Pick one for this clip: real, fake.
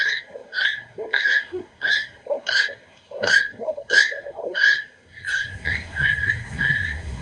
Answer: fake